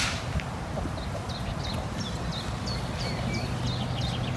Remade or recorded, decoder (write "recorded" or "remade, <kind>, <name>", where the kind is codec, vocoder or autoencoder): recorded